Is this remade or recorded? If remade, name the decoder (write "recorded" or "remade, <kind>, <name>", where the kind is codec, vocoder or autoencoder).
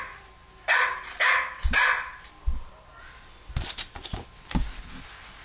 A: recorded